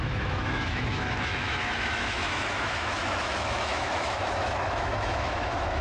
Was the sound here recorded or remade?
remade